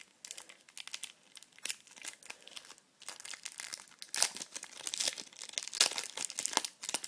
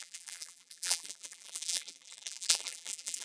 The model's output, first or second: second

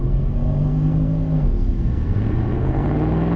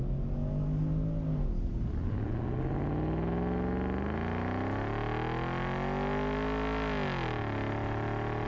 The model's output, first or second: first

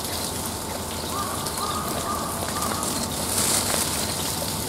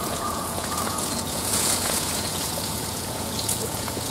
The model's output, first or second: second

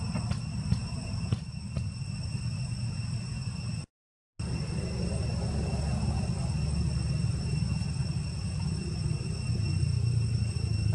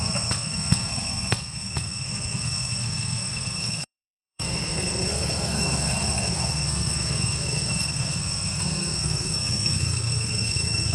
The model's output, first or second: second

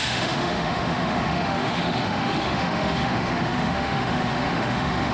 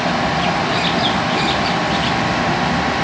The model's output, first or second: first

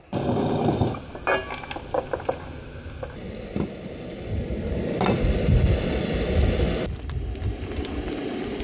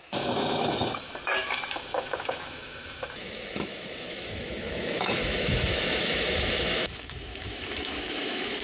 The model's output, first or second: second